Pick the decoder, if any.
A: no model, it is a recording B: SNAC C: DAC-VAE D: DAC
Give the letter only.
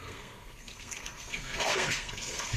B